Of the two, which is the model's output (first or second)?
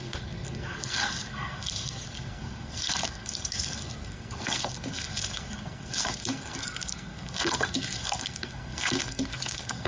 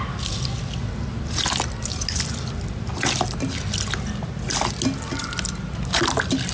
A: first